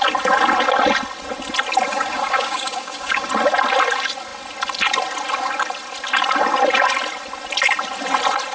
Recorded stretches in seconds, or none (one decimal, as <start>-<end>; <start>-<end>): 0.0-1.9; 3.3-8.5